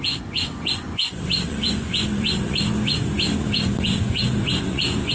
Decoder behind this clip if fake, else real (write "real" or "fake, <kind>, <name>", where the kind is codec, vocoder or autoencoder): fake, vocoder, Vocos